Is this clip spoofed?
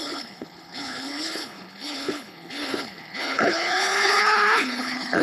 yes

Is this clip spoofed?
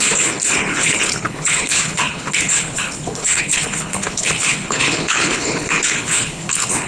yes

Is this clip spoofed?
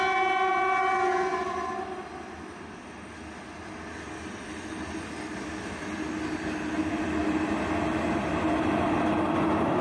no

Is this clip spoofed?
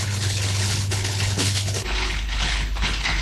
yes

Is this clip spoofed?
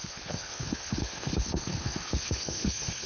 yes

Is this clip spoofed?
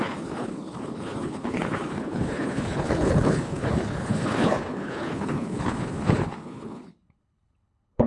yes